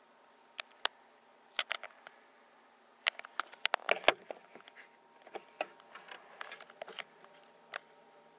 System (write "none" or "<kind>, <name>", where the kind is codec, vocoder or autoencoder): none